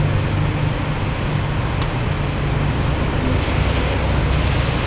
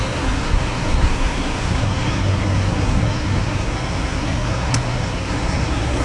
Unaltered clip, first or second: first